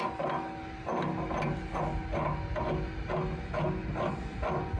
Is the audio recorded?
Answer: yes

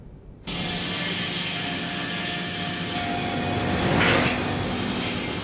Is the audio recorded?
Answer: yes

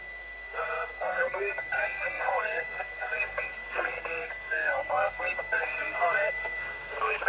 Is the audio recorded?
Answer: no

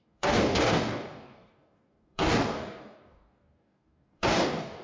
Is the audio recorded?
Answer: no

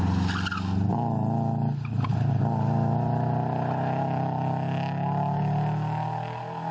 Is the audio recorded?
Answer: yes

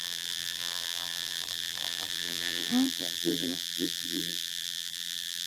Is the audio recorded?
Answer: no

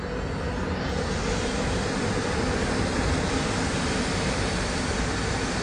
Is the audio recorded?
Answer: yes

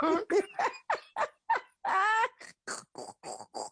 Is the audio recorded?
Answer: yes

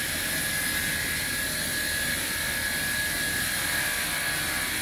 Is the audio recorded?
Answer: yes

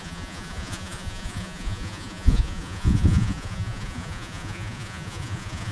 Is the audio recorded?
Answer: no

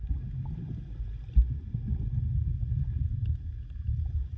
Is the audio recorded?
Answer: yes